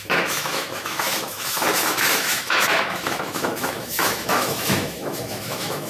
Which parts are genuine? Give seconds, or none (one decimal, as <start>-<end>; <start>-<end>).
none